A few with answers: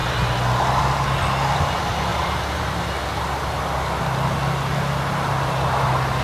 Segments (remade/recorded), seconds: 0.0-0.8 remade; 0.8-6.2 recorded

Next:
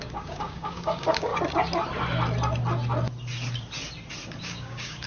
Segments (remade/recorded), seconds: 0.0-1.3 remade; 1.3-4.4 recorded; 4.4-5.1 remade

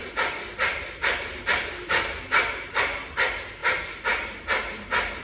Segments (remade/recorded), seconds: 0.0-5.2 recorded

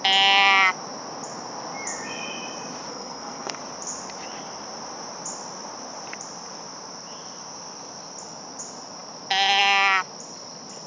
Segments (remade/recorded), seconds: 0.0-2.9 recorded; 2.9-3.6 remade; 3.6-10.9 recorded